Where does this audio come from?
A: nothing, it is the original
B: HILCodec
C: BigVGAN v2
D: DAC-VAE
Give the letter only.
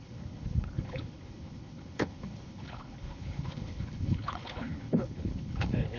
B